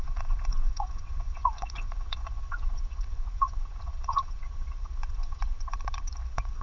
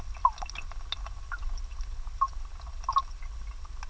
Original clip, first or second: second